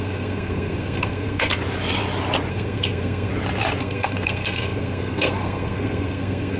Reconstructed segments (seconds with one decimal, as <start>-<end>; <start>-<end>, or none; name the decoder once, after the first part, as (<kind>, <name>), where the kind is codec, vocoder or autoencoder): 0.0-1.5 (codec, SNAC); 2.5-3.3; 3.8-6.6